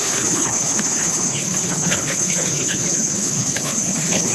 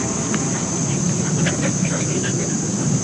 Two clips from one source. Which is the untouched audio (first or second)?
second